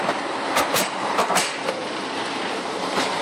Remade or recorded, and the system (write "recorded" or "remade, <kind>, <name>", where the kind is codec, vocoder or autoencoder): remade, vocoder, BigVGAN v2